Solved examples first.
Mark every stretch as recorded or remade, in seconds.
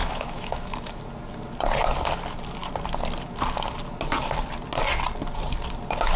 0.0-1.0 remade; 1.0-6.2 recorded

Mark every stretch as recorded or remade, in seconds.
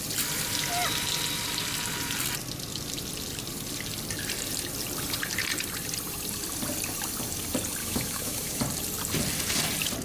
0.0-7.8 recorded; 7.8-8.6 remade; 8.6-10.0 recorded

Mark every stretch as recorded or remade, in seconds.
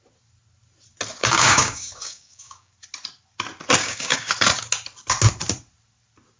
0.0-1.2 recorded; 1.2-2.7 remade; 2.7-3.8 recorded; 3.8-4.3 remade; 4.3-6.4 recorded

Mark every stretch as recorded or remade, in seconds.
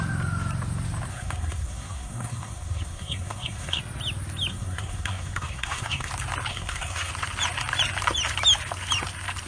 0.0-1.1 recorded; 1.1-3.8 remade; 3.8-4.5 recorded; 4.5-6.1 remade; 6.1-6.5 recorded; 6.5-7.1 remade; 7.1-9.5 recorded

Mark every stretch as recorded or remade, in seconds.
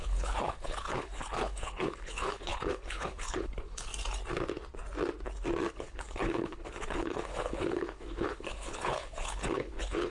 0.0-3.9 remade; 3.9-5.7 recorded; 5.7-10.1 remade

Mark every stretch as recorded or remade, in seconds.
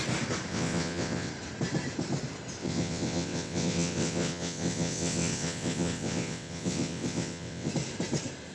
0.0-0.5 recorded; 0.5-1.3 remade; 1.3-2.6 recorded; 2.6-7.7 remade; 7.7-8.5 recorded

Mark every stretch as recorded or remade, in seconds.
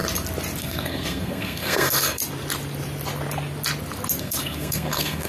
0.0-0.6 recorded; 0.6-2.2 remade; 2.2-4.2 recorded; 4.2-5.3 remade